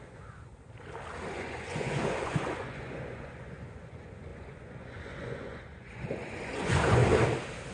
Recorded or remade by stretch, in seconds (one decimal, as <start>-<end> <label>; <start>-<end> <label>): 0.0-0.5 remade; 0.5-1.3 recorded; 1.3-7.0 remade; 7.0-7.7 recorded